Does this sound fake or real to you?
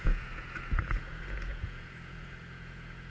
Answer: fake